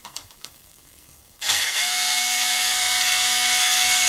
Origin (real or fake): fake